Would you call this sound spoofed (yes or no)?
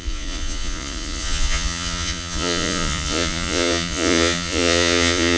yes